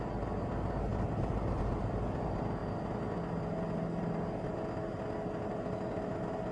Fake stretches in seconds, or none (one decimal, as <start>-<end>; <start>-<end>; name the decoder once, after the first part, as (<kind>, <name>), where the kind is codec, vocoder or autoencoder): none